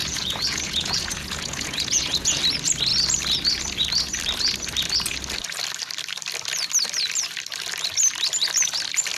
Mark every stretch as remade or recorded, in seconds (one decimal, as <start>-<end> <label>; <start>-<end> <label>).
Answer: 0.0-2.4 remade; 2.4-9.2 recorded